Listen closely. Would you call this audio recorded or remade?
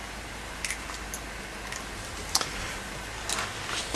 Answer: recorded